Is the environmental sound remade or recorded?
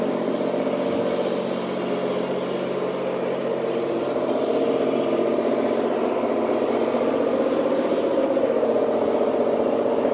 recorded